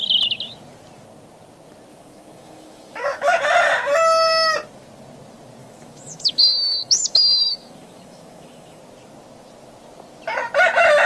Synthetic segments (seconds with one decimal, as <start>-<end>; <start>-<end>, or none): 1.9-3.4; 5.6-8.8